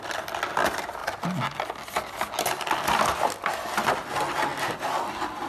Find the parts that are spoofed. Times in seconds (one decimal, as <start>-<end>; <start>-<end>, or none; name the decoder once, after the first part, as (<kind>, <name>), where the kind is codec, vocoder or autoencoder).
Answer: none